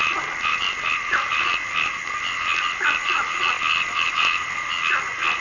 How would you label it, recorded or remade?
recorded